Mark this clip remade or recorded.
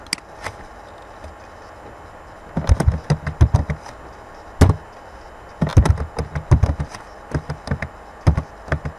recorded